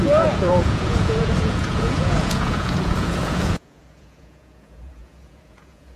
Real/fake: fake